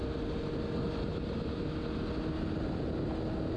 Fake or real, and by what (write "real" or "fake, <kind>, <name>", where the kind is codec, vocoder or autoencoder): real